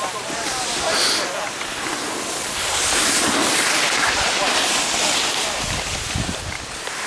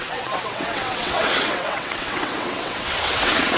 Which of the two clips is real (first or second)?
first